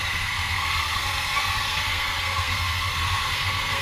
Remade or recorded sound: remade